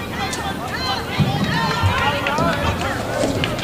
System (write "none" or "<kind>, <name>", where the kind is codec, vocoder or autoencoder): none